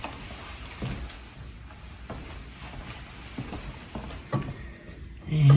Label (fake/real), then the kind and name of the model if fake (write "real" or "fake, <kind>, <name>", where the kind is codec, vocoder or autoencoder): real